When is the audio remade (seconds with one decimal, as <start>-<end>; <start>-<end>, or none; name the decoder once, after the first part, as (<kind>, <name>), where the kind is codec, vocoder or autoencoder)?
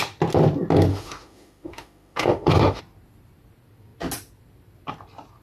0.9-2.8 (autoencoder, DAC-VAE)